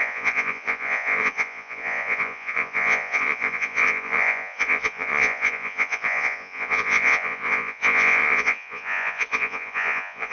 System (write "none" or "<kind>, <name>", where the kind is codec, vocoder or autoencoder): vocoder, Vocos